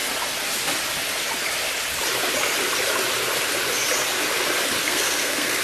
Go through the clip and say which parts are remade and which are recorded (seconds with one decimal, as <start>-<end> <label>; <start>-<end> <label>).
0.0-4.8 recorded; 4.8-5.6 remade